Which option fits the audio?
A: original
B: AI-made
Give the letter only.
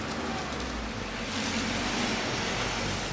A